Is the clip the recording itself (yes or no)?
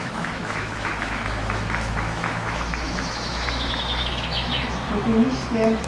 no